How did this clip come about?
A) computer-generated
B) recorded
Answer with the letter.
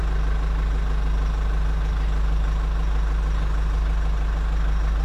B